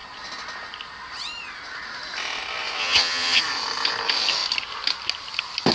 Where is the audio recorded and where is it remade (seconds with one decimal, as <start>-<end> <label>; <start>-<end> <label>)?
0.0-2.8 recorded; 2.8-3.4 remade; 3.4-5.7 recorded